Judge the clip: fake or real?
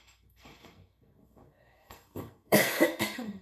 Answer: fake